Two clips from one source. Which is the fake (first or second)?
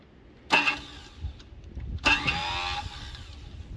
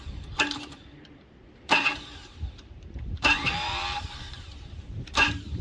second